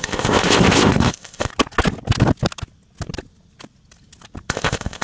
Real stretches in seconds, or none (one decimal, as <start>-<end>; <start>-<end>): 1.5-4.5